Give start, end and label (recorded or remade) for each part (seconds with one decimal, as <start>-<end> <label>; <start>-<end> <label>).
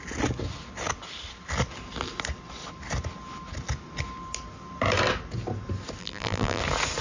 0.0-6.0 recorded; 6.0-6.6 remade; 6.6-7.0 recorded